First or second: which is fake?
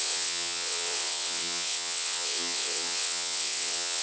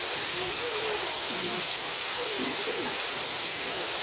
first